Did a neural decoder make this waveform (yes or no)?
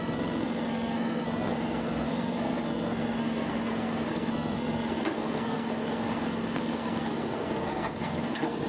yes